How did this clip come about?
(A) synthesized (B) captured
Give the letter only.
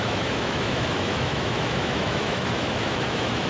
A